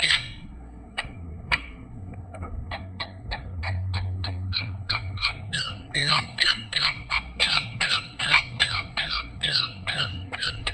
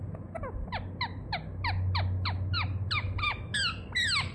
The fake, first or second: first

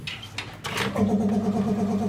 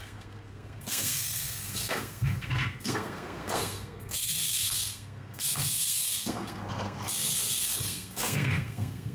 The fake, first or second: second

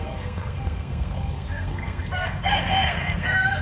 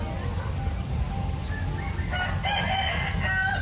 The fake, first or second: first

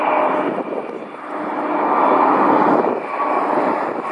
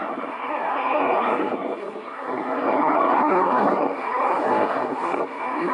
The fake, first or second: second